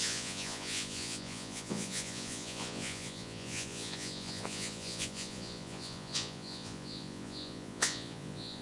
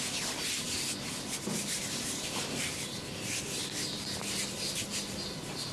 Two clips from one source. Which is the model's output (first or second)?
first